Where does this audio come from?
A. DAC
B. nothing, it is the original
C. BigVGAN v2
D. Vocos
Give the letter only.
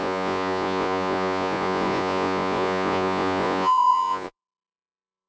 D